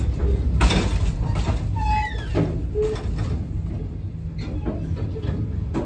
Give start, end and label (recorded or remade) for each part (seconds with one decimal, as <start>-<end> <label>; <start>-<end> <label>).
0.0-5.9 recorded